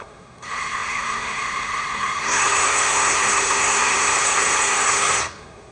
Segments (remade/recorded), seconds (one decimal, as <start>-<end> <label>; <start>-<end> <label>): 0.0-5.7 remade

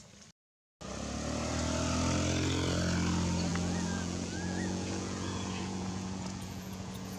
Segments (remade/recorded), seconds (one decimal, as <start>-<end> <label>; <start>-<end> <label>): 0.0-3.5 recorded; 3.5-7.2 remade

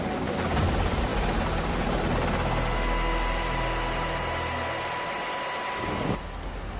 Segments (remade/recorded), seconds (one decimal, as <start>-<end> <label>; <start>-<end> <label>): 0.0-6.8 recorded

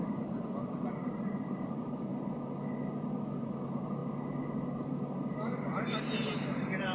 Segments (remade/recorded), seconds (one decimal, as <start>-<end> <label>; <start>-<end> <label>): 0.0-2.1 remade; 2.1-3.4 recorded; 3.4-4.0 remade; 4.0-4.8 recorded; 4.8-6.9 remade

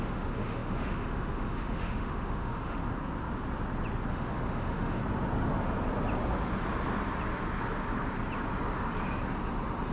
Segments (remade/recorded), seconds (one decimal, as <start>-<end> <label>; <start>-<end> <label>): 0.0-2.8 remade; 2.8-4.1 recorded; 4.1-5.0 remade; 5.0-9.9 recorded

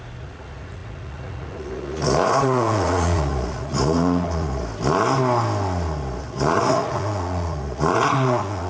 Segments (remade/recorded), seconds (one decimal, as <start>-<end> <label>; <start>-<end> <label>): 0.0-4.6 remade; 4.6-6.2 recorded; 6.2-8.7 remade

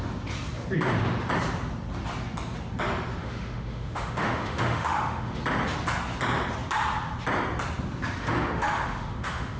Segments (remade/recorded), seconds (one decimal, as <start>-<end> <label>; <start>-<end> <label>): 0.0-3.2 recorded; 3.2-5.4 remade; 5.4-8.2 recorded; 8.2-9.6 remade

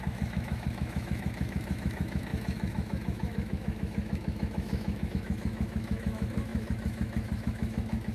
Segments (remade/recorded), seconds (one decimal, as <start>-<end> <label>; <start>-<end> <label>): 0.0-8.1 remade